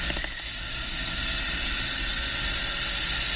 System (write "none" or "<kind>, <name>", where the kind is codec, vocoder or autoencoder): none